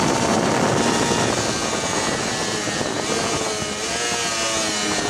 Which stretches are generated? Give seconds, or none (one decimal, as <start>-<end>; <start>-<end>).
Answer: none